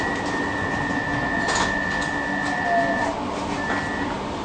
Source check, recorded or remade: recorded